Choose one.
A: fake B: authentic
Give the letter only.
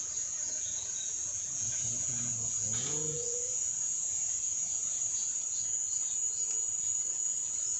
A